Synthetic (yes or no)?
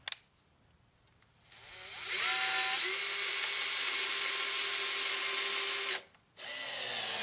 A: no